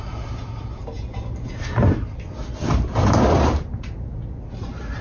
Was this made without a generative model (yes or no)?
yes